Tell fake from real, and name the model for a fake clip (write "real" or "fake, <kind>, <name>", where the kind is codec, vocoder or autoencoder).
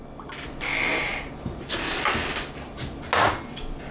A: real